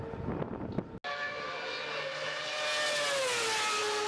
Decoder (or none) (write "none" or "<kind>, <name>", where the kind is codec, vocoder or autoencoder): none